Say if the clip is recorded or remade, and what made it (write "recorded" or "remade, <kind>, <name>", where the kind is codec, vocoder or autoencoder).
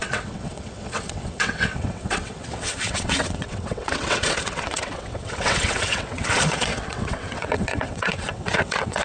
remade, vocoder, WaveNeXt